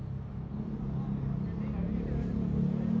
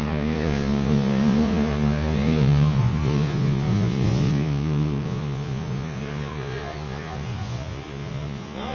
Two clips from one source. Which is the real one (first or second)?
first